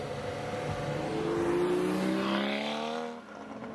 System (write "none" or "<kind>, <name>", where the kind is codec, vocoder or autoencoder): none